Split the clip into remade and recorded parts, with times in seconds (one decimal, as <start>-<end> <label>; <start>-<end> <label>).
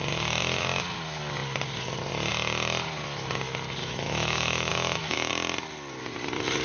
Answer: 0.0-3.8 recorded; 3.8-5.3 remade; 5.3-6.6 recorded